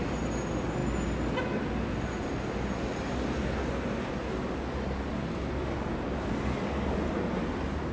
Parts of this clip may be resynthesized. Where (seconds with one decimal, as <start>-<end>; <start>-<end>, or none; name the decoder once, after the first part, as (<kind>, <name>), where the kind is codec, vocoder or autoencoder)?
none